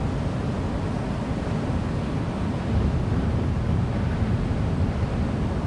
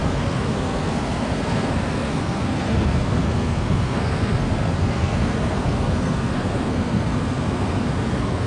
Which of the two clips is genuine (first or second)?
first